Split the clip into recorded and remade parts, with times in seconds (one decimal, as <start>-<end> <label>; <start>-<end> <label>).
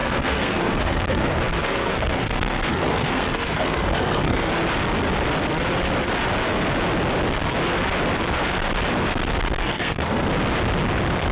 0.0-4.5 remade; 4.5-9.6 recorded; 9.6-10.3 remade; 10.3-11.3 recorded